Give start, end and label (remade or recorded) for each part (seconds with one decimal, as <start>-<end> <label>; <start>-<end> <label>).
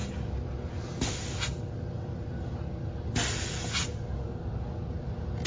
0.0-5.5 recorded